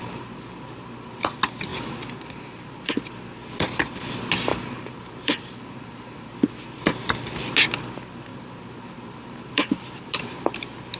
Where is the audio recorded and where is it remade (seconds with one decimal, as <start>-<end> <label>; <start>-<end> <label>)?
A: 0.0-1.7 recorded; 1.7-2.9 remade; 2.9-4.5 recorded; 4.5-6.3 remade; 6.3-8.3 recorded; 8.3-10.2 remade; 10.2-11.0 recorded